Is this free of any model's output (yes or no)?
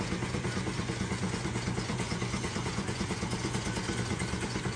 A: no